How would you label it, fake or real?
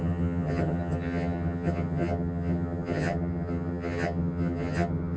fake